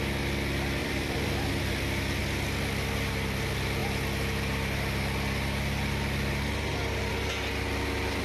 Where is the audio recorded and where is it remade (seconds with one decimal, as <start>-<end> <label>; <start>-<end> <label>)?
0.0-0.8 recorded; 0.8-2.2 remade; 2.2-8.2 recorded